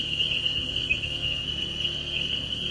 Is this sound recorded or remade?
remade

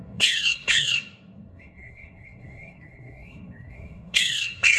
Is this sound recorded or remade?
remade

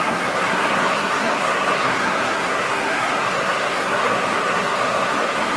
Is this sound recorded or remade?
remade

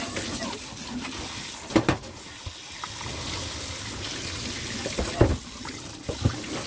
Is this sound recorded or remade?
recorded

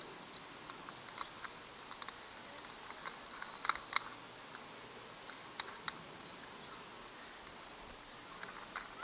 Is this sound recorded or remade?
recorded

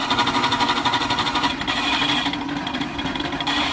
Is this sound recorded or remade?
recorded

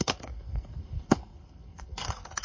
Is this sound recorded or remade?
remade